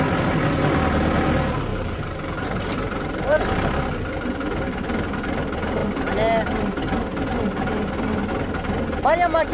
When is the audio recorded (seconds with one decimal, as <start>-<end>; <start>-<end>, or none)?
0.0-1.7; 3.4-9.5

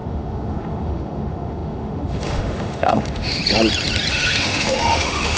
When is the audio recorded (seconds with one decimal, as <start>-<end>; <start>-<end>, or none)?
3.4-4.1

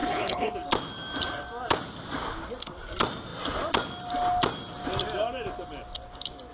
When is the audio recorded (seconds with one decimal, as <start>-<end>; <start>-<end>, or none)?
0.5-6.5